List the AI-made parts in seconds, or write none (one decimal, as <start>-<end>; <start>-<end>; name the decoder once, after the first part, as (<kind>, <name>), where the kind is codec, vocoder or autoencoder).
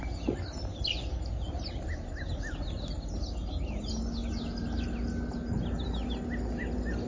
none